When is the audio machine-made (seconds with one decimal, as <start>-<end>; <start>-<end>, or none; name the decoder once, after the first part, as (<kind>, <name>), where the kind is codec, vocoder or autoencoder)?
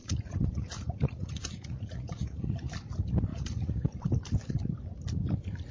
0.0-2.7 (vocoder, Vocos); 3.3-4.1